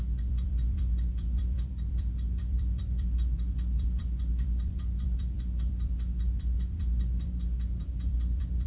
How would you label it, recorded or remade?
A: remade